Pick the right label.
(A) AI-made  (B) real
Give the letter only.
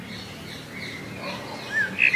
B